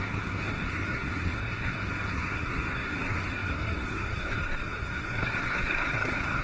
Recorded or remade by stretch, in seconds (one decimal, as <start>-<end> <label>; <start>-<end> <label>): 0.0-6.4 remade

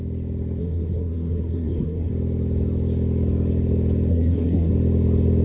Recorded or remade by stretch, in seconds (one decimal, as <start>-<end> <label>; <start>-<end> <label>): 0.0-0.6 recorded; 0.6-2.1 remade; 2.1-4.1 recorded; 4.1-4.7 remade; 4.7-5.4 recorded

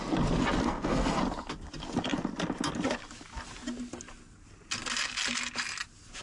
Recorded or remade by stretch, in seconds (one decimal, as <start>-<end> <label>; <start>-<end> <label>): 0.0-0.6 recorded; 0.6-1.2 remade; 1.2-6.2 recorded

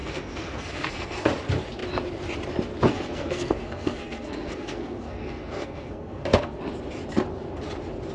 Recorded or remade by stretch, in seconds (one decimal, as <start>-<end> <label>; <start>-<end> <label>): 0.0-1.3 remade; 1.3-2.9 recorded; 2.9-6.6 remade; 6.6-8.1 recorded